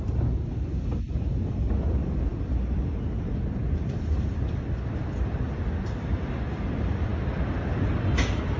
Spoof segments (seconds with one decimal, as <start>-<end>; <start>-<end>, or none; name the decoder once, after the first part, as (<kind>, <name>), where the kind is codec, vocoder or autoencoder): none